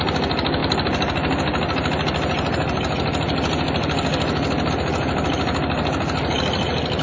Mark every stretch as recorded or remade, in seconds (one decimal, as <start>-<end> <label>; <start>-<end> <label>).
0.0-7.0 recorded